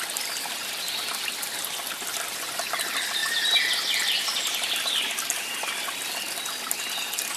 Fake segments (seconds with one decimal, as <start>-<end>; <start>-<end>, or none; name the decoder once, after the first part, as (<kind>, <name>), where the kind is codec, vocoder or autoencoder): none